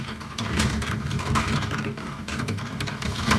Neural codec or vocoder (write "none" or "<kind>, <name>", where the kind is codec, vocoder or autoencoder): codec, DAC